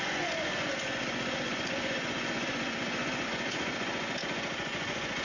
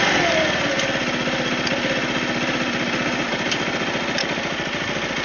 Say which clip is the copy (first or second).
first